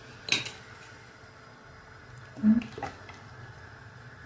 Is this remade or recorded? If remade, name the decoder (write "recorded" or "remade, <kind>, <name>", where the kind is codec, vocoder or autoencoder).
recorded